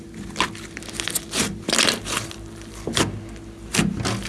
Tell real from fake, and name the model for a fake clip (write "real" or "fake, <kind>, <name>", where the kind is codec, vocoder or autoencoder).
real